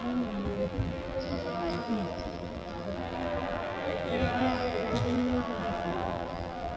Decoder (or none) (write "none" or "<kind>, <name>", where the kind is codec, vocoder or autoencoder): vocoder, BigVGAN v2